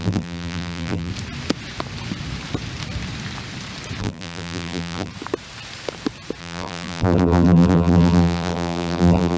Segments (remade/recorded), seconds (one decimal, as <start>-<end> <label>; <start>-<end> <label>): 0.0-1.1 remade; 1.1-4.0 recorded; 4.0-5.1 remade; 5.1-6.4 recorded; 6.4-9.4 remade